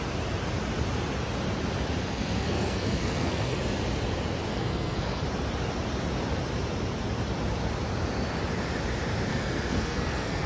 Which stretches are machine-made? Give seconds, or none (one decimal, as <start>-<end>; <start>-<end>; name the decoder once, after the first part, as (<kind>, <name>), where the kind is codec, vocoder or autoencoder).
2.0-3.6 (codec, SNAC); 4.5-5.2; 9.3-10.5